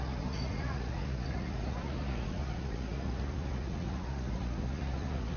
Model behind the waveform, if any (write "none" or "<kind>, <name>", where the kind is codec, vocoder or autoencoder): vocoder, Vocos